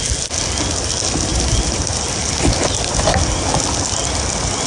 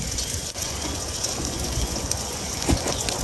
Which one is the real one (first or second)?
first